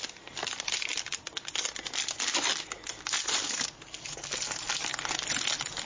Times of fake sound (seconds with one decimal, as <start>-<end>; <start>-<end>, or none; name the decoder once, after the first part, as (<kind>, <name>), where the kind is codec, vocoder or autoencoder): none

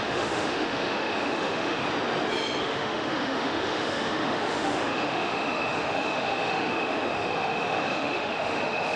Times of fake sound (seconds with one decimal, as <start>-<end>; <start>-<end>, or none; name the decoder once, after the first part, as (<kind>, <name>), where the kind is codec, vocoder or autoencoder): 0.0-1.8 (autoencoder, DAC-VAE); 2.6-9.0

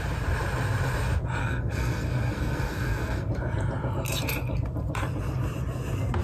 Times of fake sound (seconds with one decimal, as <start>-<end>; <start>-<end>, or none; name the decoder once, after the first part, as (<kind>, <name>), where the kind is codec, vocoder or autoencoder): 1.4-3.3 (codec, SNAC)

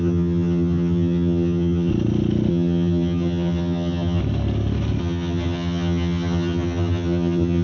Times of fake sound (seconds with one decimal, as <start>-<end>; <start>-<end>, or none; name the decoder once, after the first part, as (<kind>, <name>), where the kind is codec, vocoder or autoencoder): 0.0-1.9 (vocoder, HiFi-GAN); 2.5-4.2; 5.0-7.6

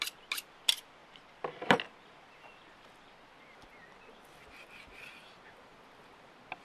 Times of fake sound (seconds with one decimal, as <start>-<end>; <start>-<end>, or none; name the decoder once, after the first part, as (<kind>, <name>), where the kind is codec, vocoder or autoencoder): none

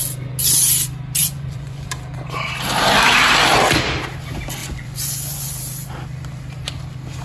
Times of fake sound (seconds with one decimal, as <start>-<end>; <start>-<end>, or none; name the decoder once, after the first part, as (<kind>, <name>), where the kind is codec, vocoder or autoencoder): 1.2-1.9 (vocoder, Vocos); 4.6-5.5